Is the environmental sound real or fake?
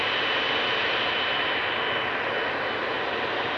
real